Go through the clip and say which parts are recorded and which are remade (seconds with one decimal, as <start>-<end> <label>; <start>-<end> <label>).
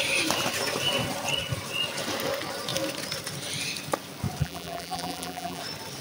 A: 0.0-4.4 recorded; 4.4-5.6 remade; 5.6-6.0 recorded